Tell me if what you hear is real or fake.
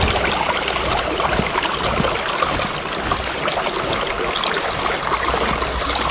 real